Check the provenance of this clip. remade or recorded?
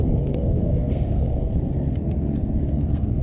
remade